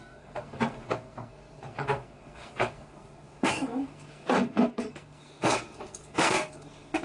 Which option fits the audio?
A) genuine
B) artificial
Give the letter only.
B